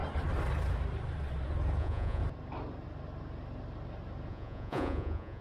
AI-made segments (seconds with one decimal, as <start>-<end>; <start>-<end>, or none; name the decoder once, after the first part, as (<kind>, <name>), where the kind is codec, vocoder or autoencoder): 1.8-2.2 (vocoder, Vocos); 4.3-5.4